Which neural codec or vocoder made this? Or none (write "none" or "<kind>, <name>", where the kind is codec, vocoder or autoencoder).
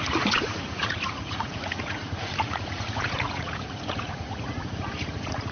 vocoder, Vocos